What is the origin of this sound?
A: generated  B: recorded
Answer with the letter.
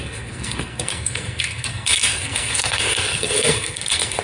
A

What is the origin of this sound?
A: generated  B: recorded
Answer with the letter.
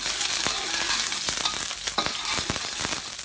B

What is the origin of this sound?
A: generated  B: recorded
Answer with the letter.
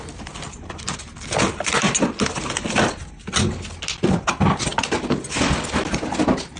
B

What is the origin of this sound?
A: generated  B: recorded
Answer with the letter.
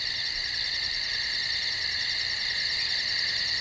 B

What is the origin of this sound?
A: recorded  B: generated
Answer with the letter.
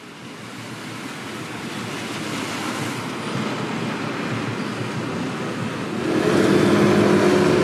A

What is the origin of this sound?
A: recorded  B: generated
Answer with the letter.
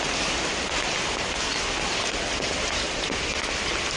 A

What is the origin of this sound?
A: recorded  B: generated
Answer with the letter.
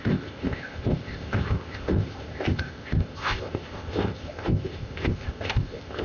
B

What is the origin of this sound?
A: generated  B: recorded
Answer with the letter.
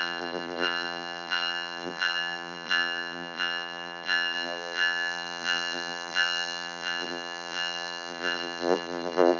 A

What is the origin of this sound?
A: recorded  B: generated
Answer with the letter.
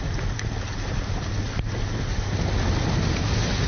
A